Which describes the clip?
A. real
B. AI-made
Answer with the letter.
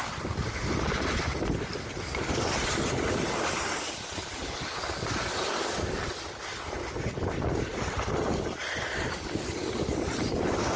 A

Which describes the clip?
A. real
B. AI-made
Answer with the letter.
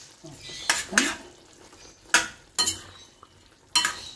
A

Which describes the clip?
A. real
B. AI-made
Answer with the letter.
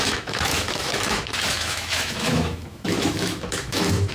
B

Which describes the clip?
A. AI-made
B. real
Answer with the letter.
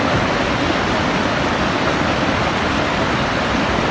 B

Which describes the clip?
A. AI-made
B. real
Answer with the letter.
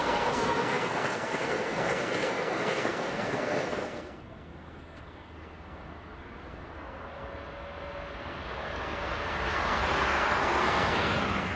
A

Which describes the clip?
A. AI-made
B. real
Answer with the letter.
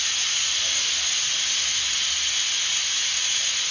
B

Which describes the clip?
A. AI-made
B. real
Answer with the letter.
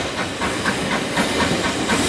B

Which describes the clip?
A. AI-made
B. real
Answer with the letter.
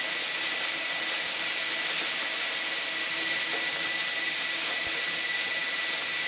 B